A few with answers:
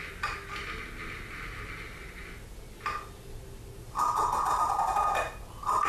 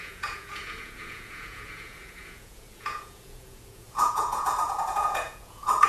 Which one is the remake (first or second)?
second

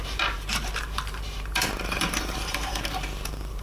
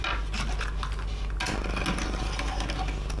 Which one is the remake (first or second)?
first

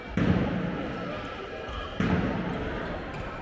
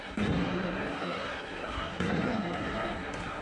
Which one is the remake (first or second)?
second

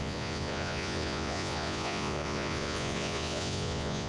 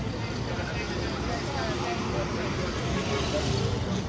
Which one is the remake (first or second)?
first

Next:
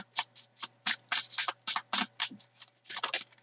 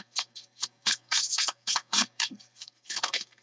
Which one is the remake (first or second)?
second